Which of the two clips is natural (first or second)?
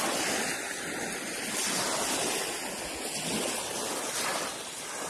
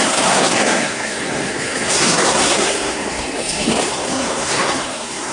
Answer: first